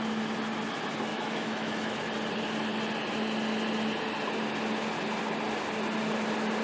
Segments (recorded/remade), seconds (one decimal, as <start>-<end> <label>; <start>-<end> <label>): 0.0-1.1 recorded; 1.1-2.0 remade; 2.0-6.6 recorded